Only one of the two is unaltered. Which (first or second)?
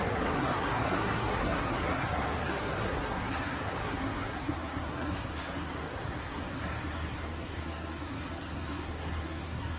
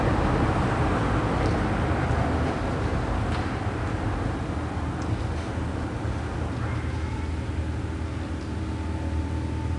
second